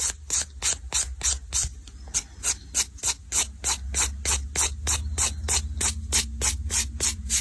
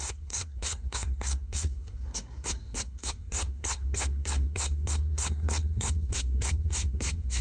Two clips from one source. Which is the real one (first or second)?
first